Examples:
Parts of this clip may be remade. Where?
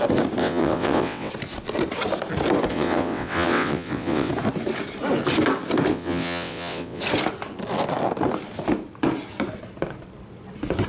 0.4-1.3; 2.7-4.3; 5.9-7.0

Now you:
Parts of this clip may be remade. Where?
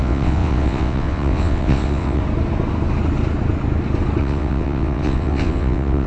0.0-2.2; 4.2-6.1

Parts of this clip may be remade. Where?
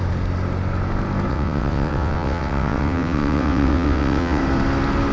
1.3-4.4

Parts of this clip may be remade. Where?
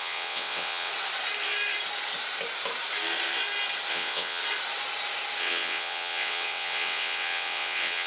0.0-0.9; 3.9-4.4; 5.4-8.1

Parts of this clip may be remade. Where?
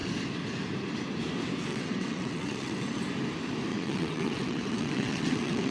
1.7-3.0; 3.7-5.7